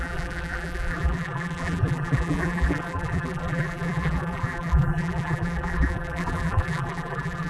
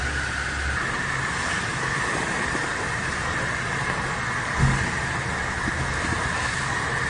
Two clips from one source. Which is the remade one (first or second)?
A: first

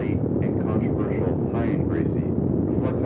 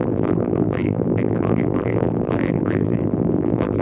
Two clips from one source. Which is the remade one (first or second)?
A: second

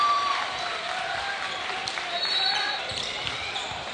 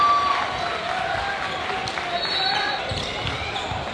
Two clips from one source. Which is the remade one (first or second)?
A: first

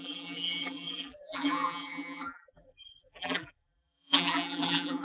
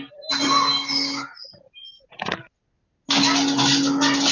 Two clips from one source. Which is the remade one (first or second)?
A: first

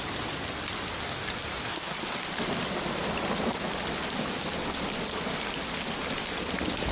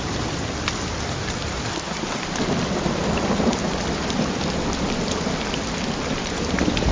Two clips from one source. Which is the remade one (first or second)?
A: second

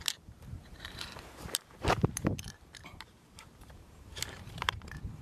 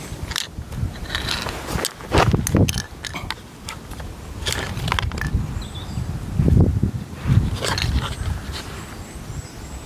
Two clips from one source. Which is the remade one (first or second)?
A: first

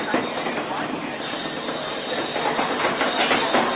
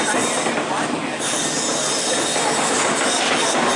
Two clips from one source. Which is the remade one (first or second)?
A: first